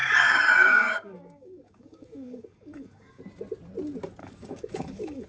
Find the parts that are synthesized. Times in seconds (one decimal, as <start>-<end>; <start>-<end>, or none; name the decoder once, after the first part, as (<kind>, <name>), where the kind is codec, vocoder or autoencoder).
0.0-3.2 (codec, DAC); 4.2-5.3